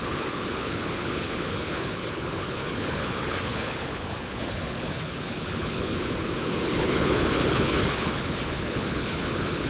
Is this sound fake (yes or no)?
yes